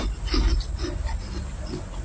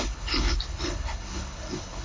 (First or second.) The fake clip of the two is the second